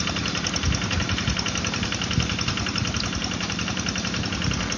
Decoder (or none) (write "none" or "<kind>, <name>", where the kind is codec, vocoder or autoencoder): none